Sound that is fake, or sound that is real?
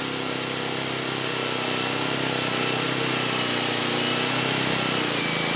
real